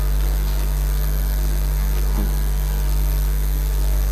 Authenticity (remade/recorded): remade